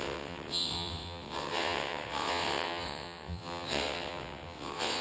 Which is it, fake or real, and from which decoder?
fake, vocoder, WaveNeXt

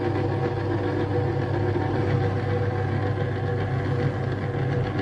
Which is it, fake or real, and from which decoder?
real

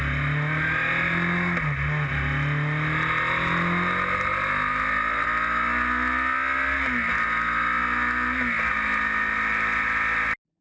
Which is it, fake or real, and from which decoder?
real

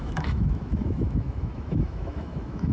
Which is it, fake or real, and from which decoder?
fake, autoencoder, DAC-VAE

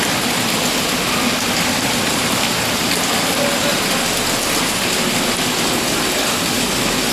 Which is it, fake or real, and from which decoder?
fake, vocoder, BigVGAN v2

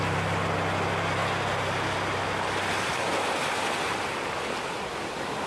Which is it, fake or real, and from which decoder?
real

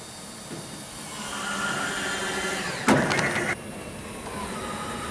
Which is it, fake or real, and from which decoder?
real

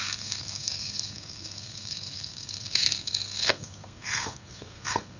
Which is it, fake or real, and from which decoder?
fake, codec, SNAC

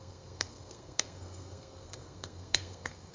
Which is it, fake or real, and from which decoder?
fake, codec, SNAC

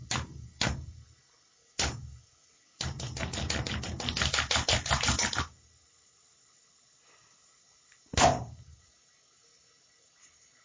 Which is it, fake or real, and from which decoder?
real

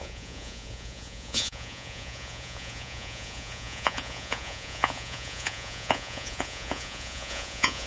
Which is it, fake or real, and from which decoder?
fake, vocoder, Vocos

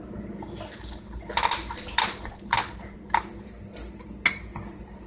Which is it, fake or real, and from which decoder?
real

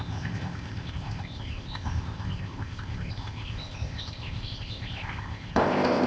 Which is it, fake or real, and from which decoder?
fake, codec, ZipCodec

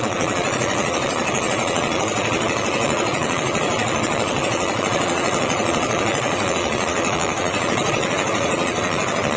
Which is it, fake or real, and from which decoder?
fake, vocoder, Vocos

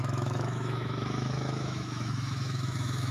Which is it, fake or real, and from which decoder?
fake, autoencoder, DAC-VAE